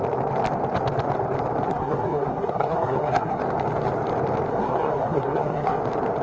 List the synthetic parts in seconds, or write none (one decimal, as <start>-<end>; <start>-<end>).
1.7-3.4; 4.5-5.8